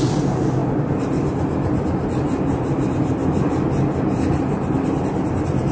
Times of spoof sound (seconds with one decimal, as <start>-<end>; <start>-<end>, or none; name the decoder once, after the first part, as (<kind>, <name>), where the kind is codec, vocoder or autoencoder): none